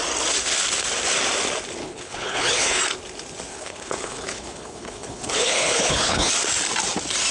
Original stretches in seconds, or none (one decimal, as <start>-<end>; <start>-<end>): 0.0-1.8; 2.8-3.5; 6.3-7.3